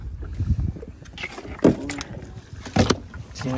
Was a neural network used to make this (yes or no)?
no